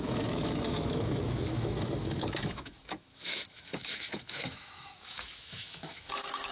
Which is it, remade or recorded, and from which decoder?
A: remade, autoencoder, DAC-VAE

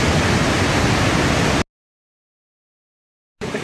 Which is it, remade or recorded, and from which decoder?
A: recorded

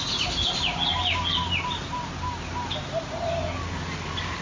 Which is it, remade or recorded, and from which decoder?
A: recorded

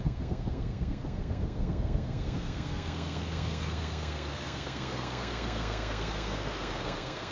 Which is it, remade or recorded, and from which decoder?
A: remade, codec, SNAC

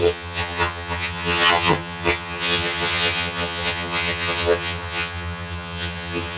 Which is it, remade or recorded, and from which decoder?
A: remade, vocoder, HiFi-GAN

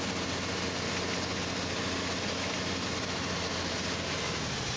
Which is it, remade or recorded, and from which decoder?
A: recorded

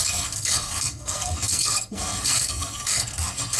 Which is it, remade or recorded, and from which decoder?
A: remade, codec, SNAC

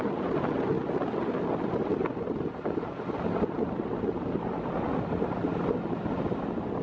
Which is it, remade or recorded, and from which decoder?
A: recorded